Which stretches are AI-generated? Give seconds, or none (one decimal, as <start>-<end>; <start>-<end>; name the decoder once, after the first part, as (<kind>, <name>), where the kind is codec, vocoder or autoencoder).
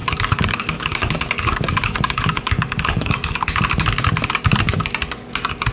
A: 0.0-3.4 (codec, DAC)